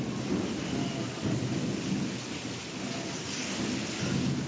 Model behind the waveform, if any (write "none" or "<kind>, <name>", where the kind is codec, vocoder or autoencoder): none